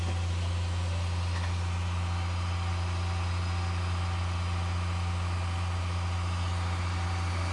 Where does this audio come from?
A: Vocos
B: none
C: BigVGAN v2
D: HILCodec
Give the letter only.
B